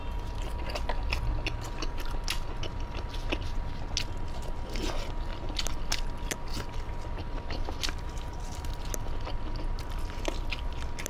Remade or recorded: recorded